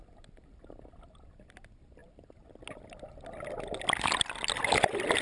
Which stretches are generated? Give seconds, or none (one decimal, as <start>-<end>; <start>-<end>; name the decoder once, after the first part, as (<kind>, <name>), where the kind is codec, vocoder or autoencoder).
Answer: none